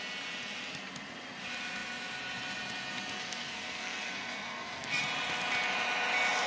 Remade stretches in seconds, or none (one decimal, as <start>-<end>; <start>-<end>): 3.2-5.0